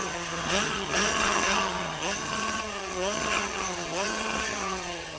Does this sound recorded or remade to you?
remade